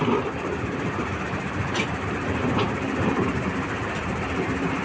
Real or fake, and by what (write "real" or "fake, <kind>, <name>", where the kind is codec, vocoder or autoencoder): fake, vocoder, BigVGAN v2